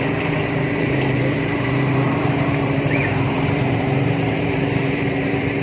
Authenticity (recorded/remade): remade